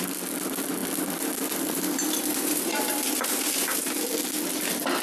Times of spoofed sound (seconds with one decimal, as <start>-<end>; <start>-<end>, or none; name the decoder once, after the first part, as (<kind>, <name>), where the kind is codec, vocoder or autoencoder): 0.8-3.8 (vocoder, BigVGAN v2)